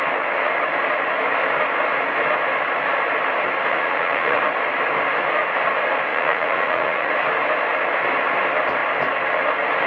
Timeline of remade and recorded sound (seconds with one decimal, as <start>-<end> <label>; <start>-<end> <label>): 0.0-3.7 recorded; 3.7-4.4 remade; 4.4-6.1 recorded; 6.1-7.1 remade; 7.1-9.9 recorded